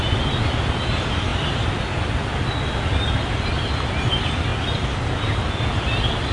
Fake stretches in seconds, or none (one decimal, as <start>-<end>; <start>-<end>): none